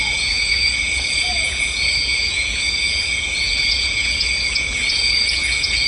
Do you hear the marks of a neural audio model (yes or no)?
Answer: yes